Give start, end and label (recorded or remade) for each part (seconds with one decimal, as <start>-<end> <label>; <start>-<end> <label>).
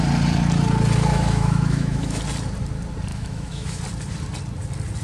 0.0-1.1 recorded; 1.1-2.2 remade; 2.2-3.1 recorded; 3.1-3.8 remade; 3.8-5.0 recorded